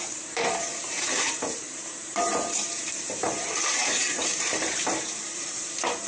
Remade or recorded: remade